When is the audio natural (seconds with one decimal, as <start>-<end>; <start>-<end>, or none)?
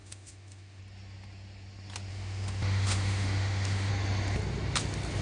0.8-2.1; 3.9-5.2